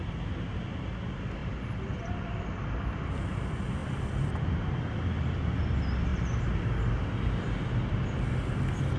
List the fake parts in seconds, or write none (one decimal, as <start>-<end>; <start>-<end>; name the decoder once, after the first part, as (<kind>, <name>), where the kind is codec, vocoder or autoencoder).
1.4-3.4 (vocoder, BigVGAN v2); 3.8-4.5